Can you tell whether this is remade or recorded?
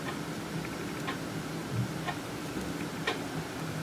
recorded